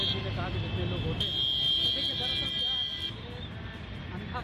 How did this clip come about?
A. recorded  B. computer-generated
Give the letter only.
A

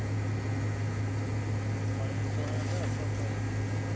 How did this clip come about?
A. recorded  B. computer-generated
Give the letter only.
A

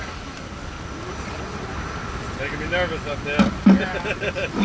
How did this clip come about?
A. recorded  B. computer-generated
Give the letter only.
A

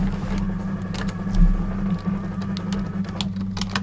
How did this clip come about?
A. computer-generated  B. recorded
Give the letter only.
B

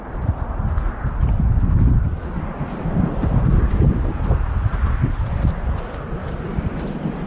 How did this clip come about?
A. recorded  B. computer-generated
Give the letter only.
A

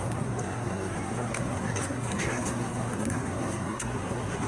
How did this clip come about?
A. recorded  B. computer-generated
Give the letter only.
B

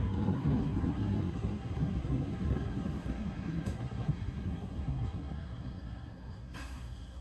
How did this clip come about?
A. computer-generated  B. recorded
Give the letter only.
A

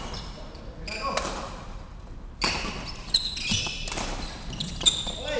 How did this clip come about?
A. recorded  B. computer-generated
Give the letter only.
A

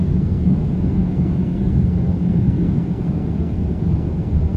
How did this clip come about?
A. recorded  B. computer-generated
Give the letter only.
B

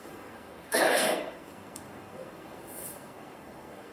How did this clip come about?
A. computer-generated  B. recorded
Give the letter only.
A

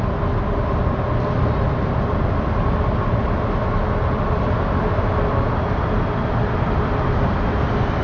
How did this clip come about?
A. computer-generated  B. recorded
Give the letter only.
B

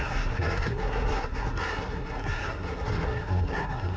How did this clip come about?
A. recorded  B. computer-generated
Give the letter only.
B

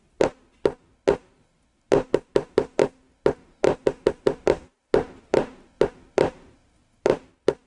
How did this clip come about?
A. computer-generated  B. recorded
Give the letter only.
B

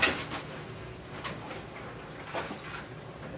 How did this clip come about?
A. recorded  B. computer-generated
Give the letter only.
A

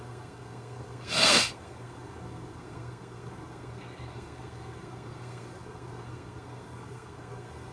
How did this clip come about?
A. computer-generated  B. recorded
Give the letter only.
A